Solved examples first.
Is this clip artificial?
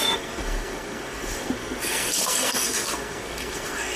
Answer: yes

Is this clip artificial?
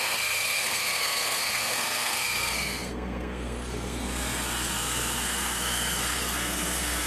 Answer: yes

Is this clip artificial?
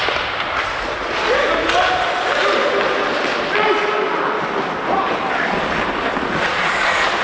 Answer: no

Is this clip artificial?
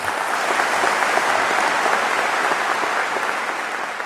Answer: no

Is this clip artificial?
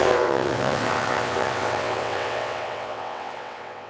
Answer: yes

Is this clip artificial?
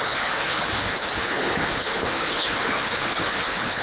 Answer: yes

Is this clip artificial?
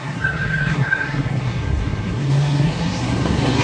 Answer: yes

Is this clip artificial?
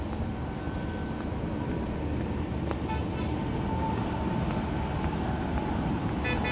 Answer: no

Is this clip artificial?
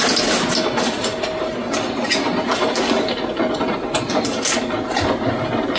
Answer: no